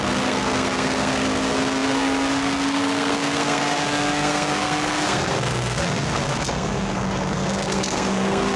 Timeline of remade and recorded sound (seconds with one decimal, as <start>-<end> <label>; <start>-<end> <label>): 0.0-8.6 remade